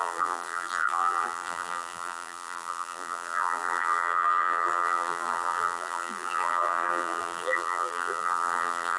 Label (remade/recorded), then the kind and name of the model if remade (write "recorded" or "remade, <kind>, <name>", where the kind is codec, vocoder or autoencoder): remade, vocoder, BigVGAN v2